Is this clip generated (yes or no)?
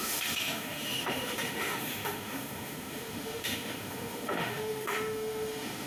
yes